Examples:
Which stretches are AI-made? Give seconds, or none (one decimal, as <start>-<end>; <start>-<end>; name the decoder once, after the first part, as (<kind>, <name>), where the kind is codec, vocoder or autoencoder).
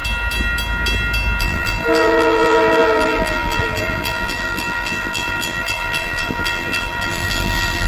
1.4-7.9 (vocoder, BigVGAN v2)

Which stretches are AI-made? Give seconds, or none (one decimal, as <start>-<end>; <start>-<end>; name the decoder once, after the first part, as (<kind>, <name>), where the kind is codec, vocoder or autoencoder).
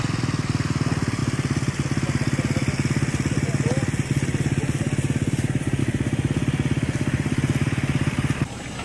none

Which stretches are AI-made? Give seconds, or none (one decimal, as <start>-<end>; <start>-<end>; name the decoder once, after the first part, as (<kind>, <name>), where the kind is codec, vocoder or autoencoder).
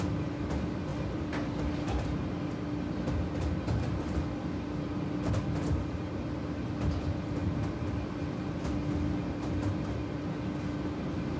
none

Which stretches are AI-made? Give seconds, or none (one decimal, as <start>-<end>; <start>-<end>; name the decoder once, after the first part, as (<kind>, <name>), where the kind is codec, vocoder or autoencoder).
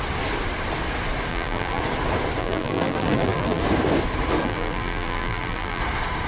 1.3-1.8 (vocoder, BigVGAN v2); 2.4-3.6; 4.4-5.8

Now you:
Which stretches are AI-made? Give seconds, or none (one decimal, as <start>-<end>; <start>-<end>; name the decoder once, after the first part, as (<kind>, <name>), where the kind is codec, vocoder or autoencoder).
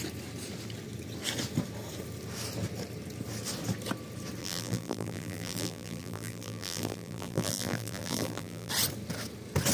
4.4-8.7 (vocoder, BigVGAN v2)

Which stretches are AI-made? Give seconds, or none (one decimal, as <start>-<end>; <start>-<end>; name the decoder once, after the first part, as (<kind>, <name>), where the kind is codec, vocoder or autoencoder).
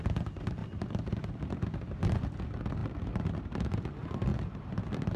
0.6-1.3 (vocoder, BigVGAN v2); 4.3-4.8